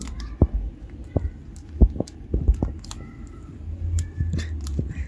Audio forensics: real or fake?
real